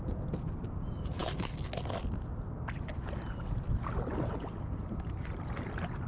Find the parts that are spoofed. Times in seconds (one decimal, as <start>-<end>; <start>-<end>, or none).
none